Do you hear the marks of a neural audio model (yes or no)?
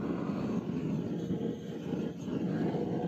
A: no